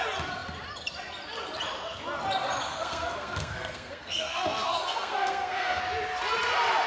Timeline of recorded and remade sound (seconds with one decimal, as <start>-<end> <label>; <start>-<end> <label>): 0.0-2.7 recorded; 2.7-5.8 remade; 5.8-6.9 recorded